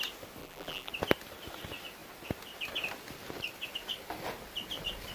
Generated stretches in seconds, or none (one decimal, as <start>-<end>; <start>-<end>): 0.4-0.9